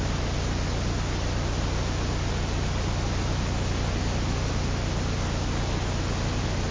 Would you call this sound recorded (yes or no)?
yes